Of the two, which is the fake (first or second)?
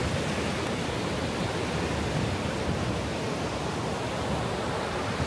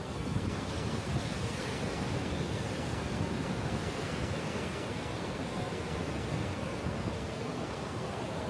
second